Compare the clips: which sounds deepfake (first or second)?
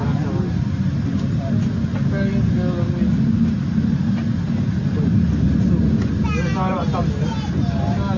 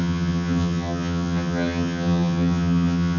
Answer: second